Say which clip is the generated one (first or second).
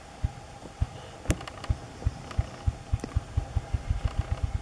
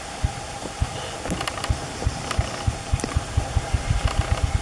second